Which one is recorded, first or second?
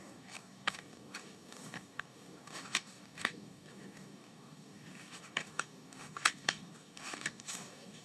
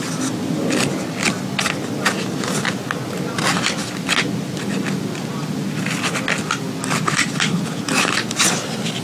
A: second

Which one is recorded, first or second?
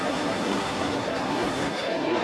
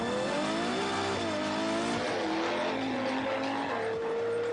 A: second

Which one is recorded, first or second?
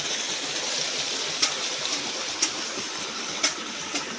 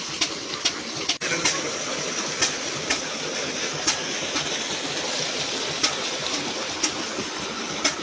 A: second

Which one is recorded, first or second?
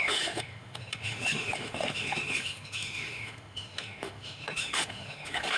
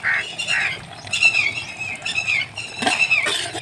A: second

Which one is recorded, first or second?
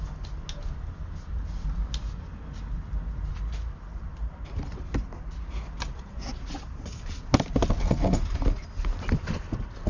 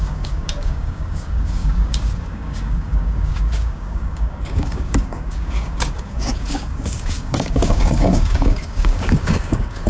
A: first